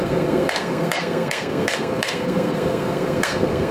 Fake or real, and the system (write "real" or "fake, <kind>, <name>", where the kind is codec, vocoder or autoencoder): fake, codec, SNAC